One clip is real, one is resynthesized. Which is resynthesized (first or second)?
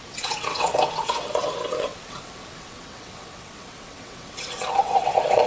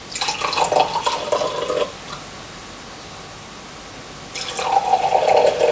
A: first